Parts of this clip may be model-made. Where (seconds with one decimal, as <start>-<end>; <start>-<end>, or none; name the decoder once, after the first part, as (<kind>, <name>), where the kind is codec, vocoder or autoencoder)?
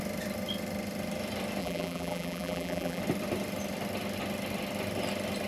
1.6-3.0 (vocoder, BigVGAN v2)